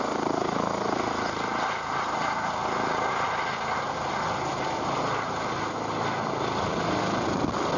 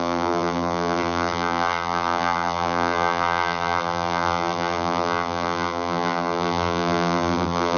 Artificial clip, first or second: second